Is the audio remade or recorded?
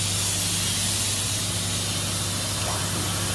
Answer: recorded